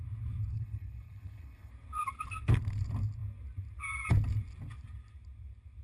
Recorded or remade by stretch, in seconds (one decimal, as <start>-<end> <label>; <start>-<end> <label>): 0.0-0.5 recorded; 0.5-1.7 remade; 1.7-5.8 recorded